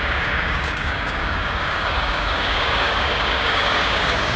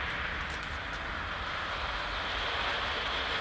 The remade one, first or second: first